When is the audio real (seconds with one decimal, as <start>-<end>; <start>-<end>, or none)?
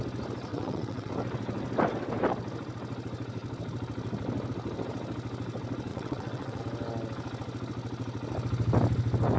0.0-0.5; 1.1-5.9; 6.6-9.4